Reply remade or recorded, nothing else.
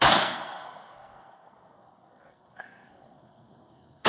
remade